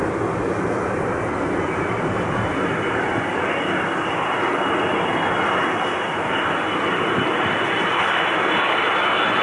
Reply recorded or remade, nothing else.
recorded